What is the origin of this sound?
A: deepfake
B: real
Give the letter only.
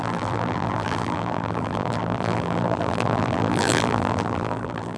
A